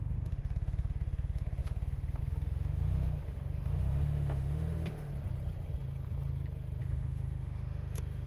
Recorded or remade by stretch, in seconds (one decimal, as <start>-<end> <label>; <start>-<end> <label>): 0.0-5.1 remade; 5.1-6.8 recorded; 6.8-8.3 remade